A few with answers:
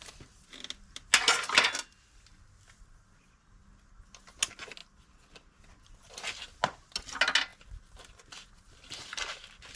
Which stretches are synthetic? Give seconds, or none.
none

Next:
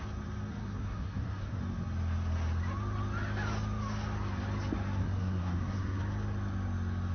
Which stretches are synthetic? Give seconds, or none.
0.5-1.6 (codec, SNAC); 5.0-6.0